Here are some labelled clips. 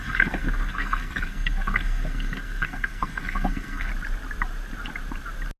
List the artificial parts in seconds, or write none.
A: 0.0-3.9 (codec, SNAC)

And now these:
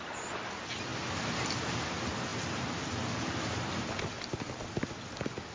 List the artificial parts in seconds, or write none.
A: none